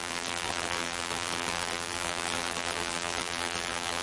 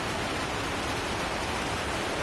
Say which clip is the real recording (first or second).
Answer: second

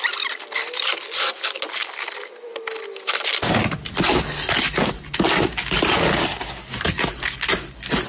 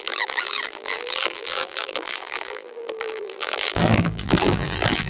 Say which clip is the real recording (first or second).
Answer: first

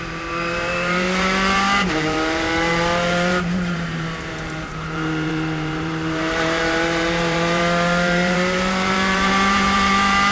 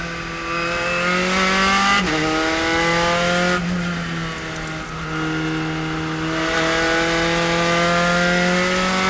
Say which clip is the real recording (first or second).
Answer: second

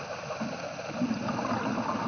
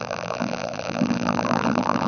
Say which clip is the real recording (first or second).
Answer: first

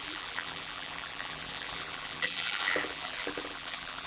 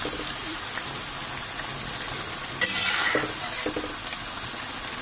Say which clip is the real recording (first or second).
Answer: second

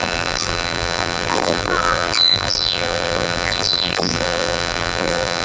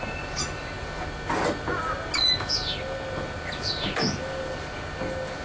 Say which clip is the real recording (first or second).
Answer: second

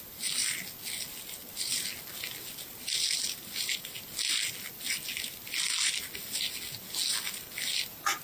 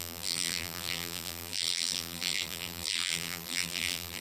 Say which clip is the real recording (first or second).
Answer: first